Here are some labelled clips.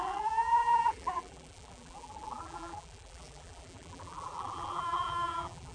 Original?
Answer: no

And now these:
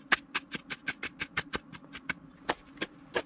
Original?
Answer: yes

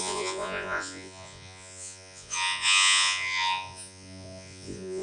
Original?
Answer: no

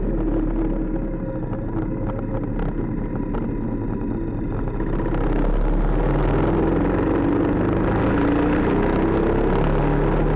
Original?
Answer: yes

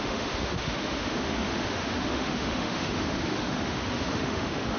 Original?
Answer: no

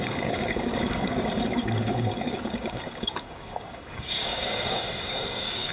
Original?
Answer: no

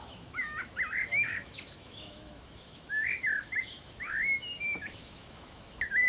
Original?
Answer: no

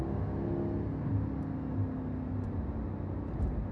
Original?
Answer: yes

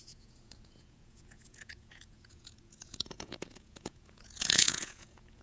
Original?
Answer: no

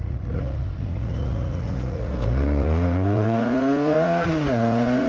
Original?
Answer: no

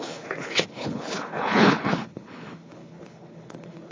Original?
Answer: no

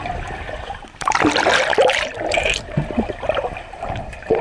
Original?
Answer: yes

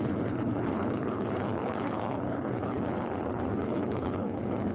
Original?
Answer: no